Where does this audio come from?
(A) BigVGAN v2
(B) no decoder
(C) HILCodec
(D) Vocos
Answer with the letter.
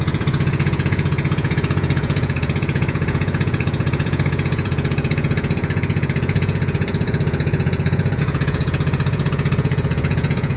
D